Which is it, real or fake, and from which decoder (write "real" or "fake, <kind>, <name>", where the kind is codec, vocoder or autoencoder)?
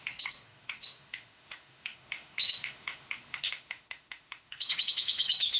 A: fake, autoencoder, DAC-VAE